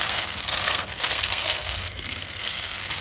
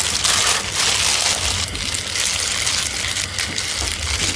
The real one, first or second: second